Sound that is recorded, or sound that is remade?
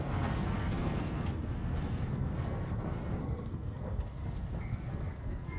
remade